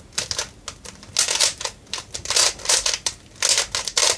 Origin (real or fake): real